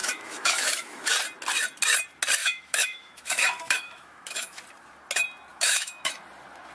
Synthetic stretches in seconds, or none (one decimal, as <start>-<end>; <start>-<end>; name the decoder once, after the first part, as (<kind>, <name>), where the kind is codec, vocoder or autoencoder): 0.0-1.1 (autoencoder, DAC-VAE); 2.4-4.6; 5.5-6.2